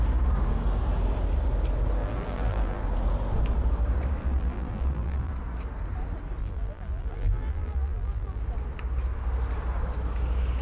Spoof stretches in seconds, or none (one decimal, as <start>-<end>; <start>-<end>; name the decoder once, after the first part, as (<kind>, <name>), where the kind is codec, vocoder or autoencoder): 2.0-2.8 (vocoder, BigVGAN v2); 4.2-5.3; 6.4-8.4